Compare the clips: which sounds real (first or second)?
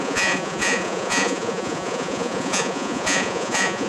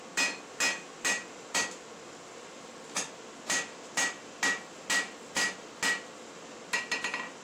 second